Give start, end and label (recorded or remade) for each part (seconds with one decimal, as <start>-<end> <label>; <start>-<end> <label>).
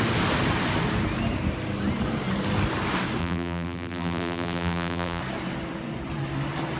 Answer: 0.0-3.2 recorded; 3.2-5.2 remade; 5.2-6.8 recorded